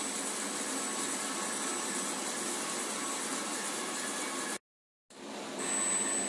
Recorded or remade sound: recorded